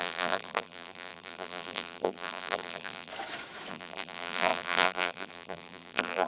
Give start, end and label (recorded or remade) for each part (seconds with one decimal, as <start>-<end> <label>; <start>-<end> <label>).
0.0-3.1 remade; 3.1-3.7 recorded; 3.7-6.3 remade